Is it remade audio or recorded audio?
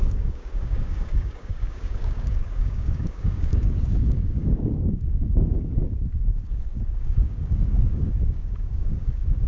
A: remade